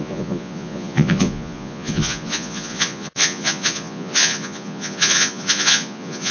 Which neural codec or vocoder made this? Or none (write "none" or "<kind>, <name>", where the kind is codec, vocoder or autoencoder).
vocoder, Vocos